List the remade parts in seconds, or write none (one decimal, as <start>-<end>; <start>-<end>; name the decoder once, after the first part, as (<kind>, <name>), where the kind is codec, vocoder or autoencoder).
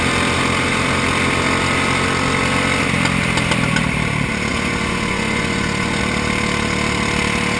4.5-6.0 (vocoder, Vocos)